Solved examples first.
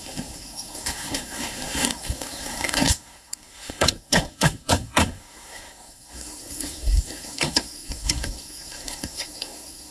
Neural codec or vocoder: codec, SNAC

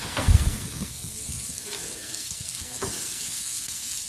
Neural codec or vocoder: codec, SNAC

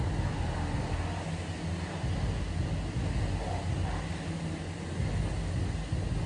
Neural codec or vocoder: none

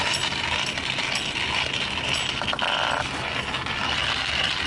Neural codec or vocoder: none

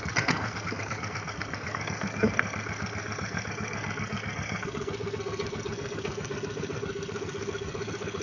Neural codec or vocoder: codec, SNAC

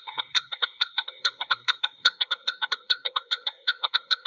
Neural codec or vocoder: codec, SNAC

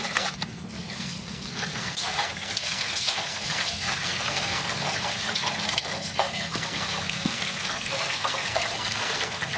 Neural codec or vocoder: codec, SNAC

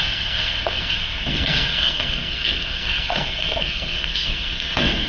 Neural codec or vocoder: codec, SNAC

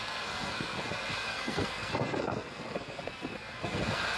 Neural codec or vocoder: codec, SNAC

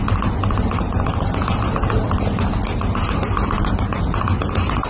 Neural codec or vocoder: none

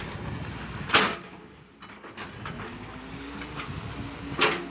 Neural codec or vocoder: none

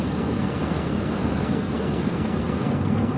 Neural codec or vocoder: codec, SNAC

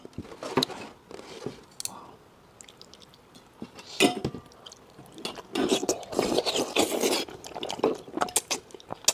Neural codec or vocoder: none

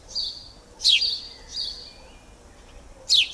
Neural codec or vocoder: none